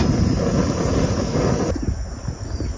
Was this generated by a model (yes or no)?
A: no